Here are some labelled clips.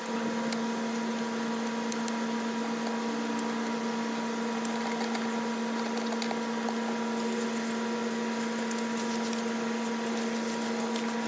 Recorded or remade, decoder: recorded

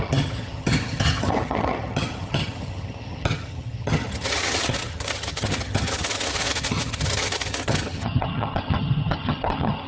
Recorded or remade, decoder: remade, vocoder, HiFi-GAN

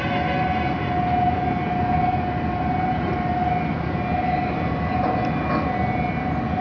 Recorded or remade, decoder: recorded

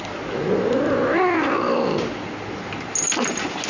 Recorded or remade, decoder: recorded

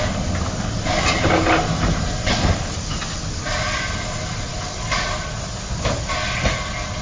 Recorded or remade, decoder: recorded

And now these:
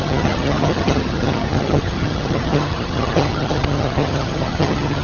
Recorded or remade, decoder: remade, vocoder, HiFi-GAN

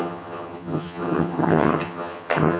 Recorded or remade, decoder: remade, vocoder, HiFi-GAN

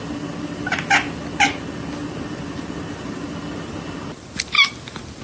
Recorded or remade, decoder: recorded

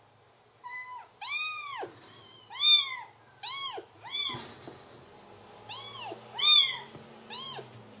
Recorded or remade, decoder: recorded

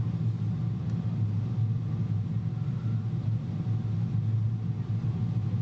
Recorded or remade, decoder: recorded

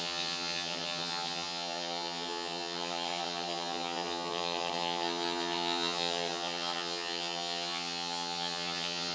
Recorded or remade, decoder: remade, vocoder, HiFi-GAN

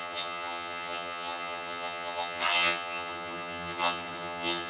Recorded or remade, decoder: remade, vocoder, HiFi-GAN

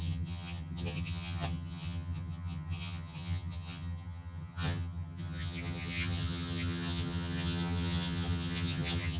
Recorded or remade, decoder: remade, vocoder, HiFi-GAN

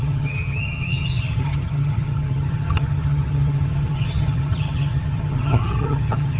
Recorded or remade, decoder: remade, vocoder, HiFi-GAN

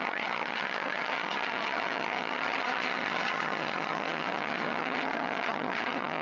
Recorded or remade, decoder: remade, vocoder, HiFi-GAN